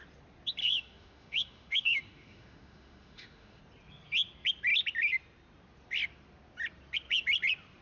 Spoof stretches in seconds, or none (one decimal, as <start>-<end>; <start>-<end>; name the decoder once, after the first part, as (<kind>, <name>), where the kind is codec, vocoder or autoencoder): 0.6-3.6 (autoencoder, DAC-VAE)